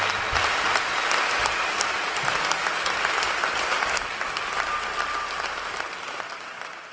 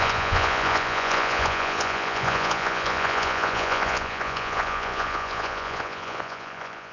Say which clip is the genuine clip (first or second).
first